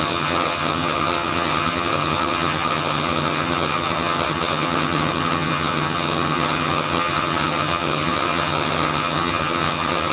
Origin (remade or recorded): remade